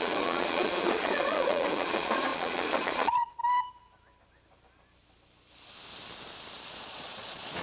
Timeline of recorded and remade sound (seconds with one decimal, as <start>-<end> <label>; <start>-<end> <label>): 0.0-3.4 remade; 3.4-6.7 recorded; 6.7-7.6 remade